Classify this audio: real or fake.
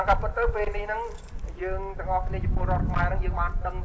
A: real